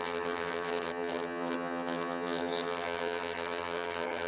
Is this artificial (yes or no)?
yes